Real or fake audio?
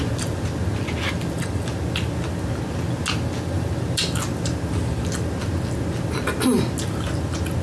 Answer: real